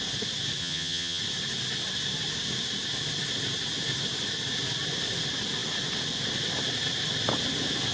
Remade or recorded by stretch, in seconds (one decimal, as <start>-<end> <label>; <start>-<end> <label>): 0.0-0.6 recorded; 0.6-1.2 remade; 1.2-7.9 recorded